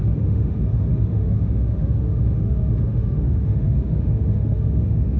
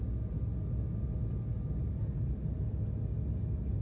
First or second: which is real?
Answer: second